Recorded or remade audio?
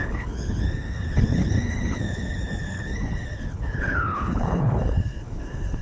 remade